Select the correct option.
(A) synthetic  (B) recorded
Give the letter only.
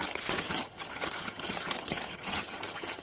A